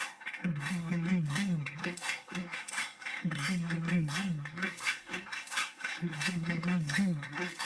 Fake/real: fake